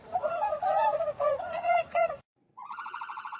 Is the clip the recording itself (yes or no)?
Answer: no